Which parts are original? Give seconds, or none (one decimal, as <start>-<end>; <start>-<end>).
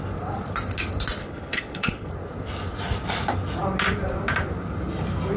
0.0-1.2; 2.1-5.4